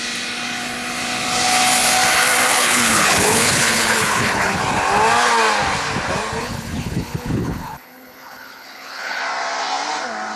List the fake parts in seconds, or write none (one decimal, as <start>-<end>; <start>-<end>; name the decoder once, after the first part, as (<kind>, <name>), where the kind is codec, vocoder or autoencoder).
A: 2.5-4.6 (codec, HILCodec); 6.4-9.2